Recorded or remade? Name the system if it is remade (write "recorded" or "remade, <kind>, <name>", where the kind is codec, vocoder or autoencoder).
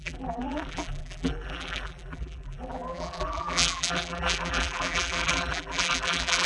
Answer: remade, vocoder, BigVGAN v2